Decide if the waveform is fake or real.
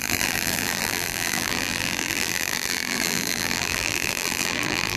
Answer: fake